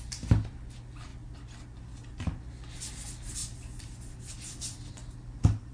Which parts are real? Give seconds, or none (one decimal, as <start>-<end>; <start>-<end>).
0.0-5.7